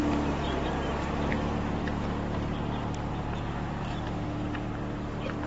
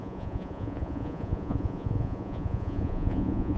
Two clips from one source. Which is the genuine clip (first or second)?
first